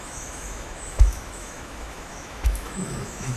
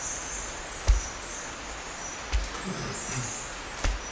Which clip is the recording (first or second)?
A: second